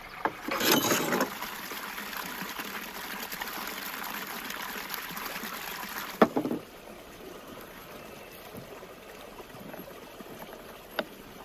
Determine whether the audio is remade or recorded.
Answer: recorded